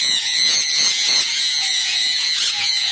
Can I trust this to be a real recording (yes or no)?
no